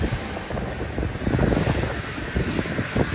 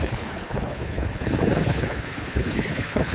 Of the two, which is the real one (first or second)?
first